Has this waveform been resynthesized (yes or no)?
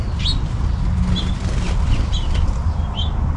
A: no